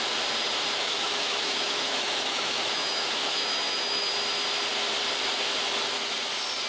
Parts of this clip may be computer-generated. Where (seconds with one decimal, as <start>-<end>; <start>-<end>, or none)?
0.7-4.1